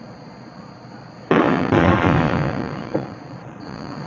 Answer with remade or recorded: remade